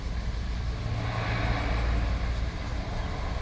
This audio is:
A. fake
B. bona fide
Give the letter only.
B